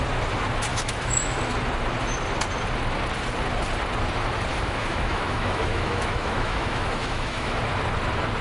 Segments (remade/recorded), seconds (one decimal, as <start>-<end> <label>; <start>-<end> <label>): 0.0-0.7 recorded; 0.7-1.4 remade; 1.4-4.5 recorded; 4.5-7.6 remade; 7.6-8.4 recorded